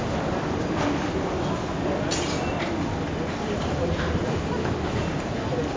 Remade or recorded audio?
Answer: recorded